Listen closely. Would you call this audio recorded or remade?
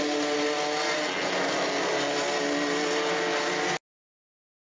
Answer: recorded